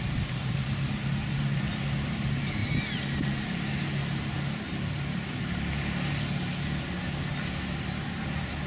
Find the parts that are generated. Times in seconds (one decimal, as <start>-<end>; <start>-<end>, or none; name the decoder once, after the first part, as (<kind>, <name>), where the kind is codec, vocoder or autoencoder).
none